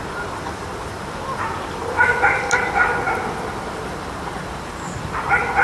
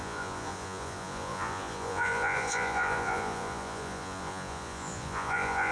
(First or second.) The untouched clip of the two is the first